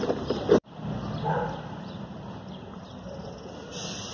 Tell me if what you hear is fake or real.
fake